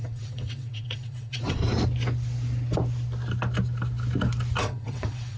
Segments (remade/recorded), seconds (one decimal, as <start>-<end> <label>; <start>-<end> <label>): 0.0-1.6 remade; 1.6-4.6 recorded; 4.6-5.4 remade